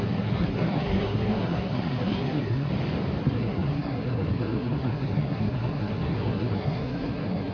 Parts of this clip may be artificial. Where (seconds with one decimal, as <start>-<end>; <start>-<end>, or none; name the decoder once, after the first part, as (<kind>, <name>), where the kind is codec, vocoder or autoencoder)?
0.0-2.7 (codec, SNAC); 3.2-7.5